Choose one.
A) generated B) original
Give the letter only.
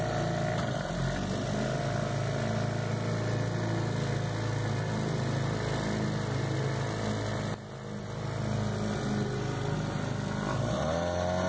B